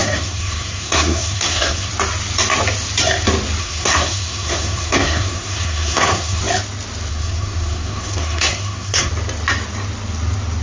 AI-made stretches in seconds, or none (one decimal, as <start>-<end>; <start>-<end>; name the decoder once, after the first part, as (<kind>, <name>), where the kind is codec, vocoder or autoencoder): 0.0-1.9 (codec, SNAC); 3.6-6.4; 7.1-9.1